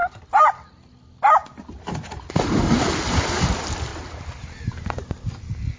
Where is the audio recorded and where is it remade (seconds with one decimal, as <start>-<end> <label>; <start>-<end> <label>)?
0.0-5.8 recorded